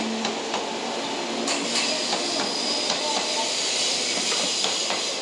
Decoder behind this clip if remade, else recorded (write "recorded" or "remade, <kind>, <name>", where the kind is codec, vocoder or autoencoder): recorded